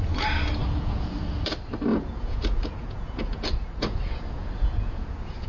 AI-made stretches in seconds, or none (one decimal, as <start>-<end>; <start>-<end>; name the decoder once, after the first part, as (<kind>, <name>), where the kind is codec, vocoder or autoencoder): 0.6-1.2 (vocoder, Vocos); 1.9-5.5